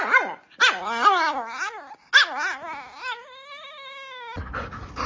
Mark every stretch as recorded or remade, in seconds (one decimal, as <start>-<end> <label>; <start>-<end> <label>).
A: 0.0-5.1 recorded